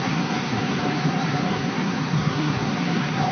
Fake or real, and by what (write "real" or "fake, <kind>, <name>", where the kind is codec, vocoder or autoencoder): fake, codec, SNAC